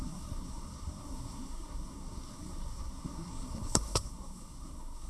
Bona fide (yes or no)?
no